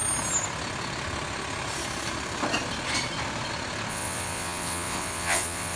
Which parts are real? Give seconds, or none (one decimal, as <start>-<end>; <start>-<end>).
0.0-3.9